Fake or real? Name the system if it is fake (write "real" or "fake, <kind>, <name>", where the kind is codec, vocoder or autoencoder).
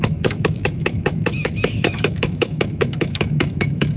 fake, autoencoder, DAC-VAE